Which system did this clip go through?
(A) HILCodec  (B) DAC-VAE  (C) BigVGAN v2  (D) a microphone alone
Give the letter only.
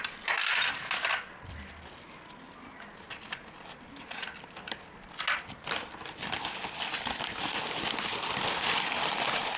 D